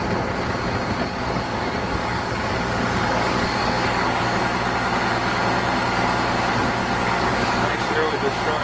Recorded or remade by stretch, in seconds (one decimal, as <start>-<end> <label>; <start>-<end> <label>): 0.0-1.0 recorded; 1.0-4.4 remade; 4.4-6.8 recorded; 6.8-7.8 remade; 7.8-8.6 recorded